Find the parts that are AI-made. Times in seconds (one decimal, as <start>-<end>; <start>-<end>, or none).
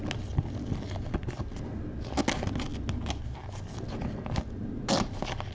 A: none